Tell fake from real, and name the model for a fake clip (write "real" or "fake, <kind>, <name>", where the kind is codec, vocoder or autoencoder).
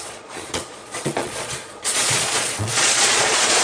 fake, vocoder, Vocos